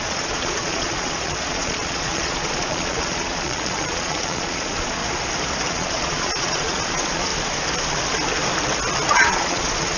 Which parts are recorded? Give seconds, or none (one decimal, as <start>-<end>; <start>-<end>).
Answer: 5.0-5.7; 7.3-9.1